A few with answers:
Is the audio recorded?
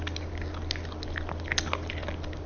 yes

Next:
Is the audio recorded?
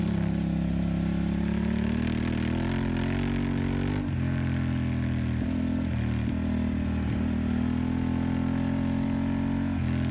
yes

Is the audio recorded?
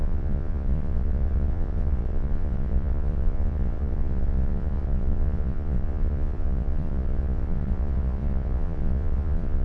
no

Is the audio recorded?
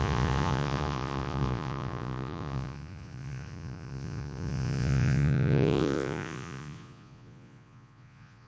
no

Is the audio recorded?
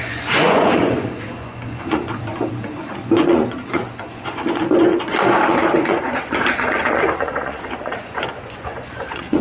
no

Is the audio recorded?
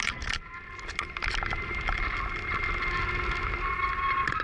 yes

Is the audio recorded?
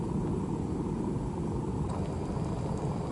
yes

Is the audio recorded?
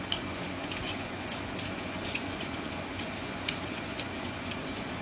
no